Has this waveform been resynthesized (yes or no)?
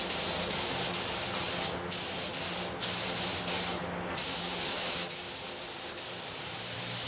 no